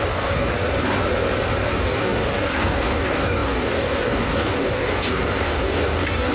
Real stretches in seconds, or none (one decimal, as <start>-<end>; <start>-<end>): 0.5-1.7